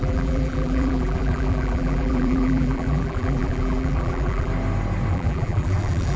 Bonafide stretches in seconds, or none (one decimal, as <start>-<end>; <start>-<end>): 4.5-5.1